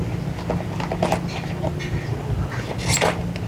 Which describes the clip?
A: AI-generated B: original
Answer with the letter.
B